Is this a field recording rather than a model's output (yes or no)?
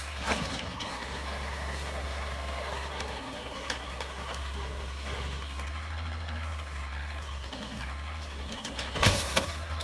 no